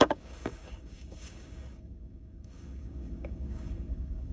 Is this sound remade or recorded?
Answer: remade